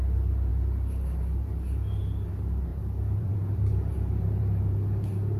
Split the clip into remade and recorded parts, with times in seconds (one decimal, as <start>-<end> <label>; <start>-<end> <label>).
0.0-2.7 recorded; 2.7-4.6 remade; 4.6-5.4 recorded